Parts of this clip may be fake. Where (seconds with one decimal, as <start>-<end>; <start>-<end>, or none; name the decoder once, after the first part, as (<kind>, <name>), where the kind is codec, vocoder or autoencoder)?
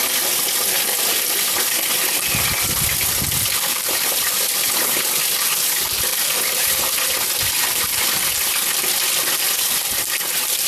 3.7-5.0 (vocoder, BigVGAN v2); 6.1-6.8